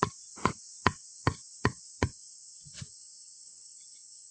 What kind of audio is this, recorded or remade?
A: remade